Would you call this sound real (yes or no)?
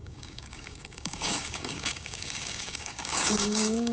no